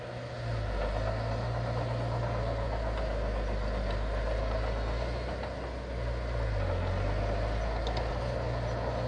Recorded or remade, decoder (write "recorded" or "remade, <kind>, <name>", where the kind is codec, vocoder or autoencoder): recorded